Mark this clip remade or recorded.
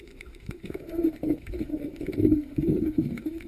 remade